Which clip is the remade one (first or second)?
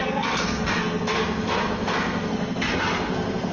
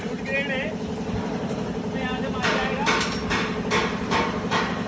first